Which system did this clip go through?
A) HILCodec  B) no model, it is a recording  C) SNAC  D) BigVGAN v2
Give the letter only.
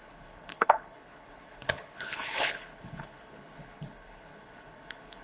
A